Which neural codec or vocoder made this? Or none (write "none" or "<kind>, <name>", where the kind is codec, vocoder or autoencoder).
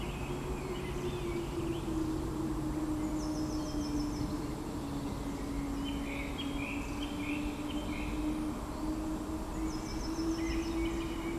none